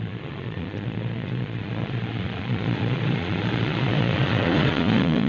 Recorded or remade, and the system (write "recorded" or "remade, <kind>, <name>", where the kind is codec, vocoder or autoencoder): remade, vocoder, Vocos